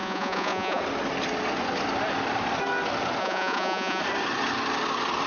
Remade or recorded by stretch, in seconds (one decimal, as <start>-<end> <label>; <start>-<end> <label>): 0.0-0.8 remade; 0.8-3.2 recorded; 3.2-4.0 remade; 4.0-5.3 recorded